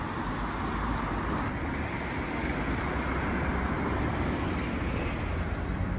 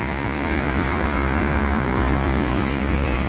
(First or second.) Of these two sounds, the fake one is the second